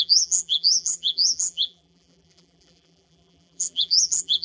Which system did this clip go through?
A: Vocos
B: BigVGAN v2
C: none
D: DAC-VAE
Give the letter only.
B